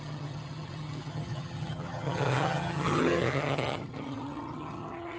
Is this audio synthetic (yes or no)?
yes